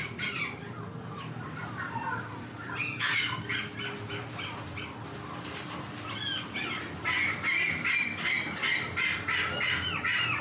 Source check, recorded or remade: recorded